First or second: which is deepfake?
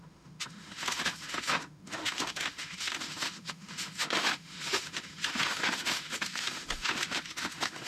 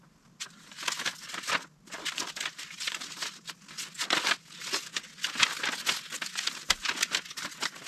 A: first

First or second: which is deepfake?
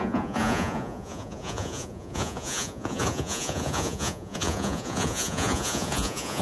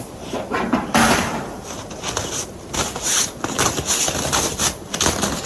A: first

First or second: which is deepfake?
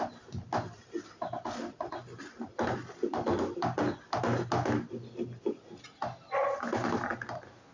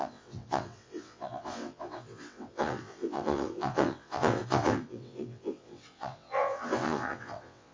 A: second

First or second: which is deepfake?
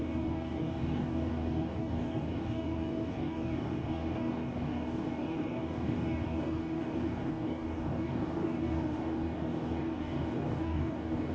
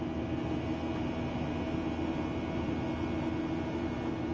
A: first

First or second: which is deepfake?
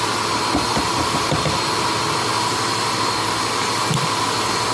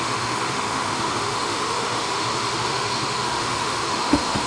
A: second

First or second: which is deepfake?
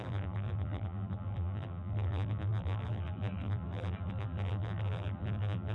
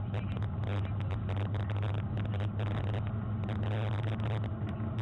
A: first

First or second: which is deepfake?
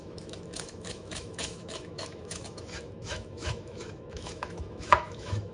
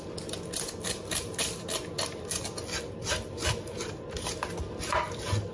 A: first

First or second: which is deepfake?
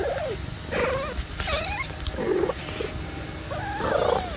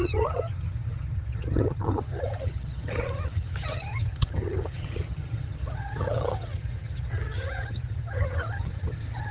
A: second